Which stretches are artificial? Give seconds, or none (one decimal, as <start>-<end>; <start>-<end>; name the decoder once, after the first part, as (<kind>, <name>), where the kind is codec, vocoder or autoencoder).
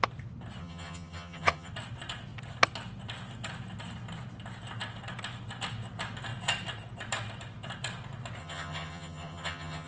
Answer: 0.6-1.7 (vocoder, HiFi-GAN); 8.4-9.9